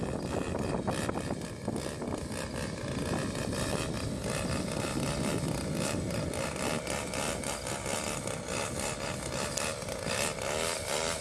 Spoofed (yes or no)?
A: no